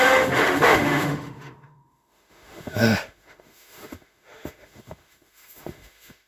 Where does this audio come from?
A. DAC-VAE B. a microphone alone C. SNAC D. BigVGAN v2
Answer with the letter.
A